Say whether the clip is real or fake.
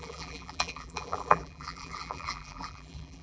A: fake